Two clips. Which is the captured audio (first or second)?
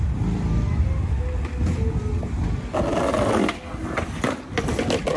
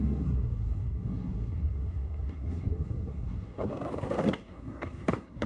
first